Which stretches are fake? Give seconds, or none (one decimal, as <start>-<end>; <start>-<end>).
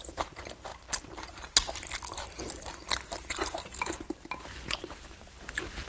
0.0-0.7; 3.3-5.9